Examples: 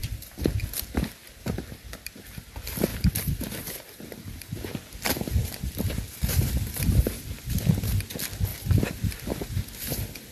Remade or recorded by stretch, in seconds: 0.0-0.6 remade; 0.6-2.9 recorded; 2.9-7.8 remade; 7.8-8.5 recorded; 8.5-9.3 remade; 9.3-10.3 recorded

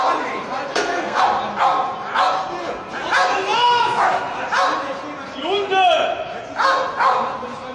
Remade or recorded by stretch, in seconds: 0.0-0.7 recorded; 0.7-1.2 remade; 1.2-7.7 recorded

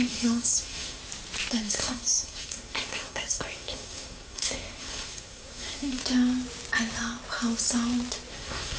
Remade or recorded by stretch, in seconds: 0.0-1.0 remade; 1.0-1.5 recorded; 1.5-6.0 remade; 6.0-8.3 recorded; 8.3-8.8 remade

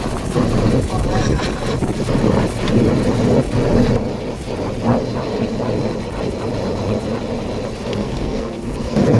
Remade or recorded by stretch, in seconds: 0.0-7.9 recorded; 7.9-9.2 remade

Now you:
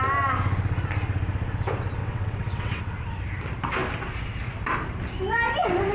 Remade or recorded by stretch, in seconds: 0.0-2.0 recorded; 2.0-2.8 remade; 2.8-5.9 recorded

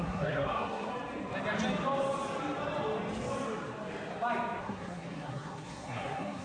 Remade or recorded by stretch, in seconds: 0.0-0.9 remade; 0.9-4.6 recorded; 4.6-6.4 remade